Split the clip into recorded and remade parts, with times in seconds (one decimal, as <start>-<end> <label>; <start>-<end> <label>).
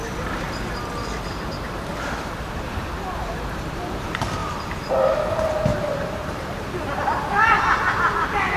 0.0-4.0 remade; 4.0-4.4 recorded; 4.4-4.9 remade; 4.9-5.7 recorded; 5.7-7.0 remade; 7.0-8.6 recorded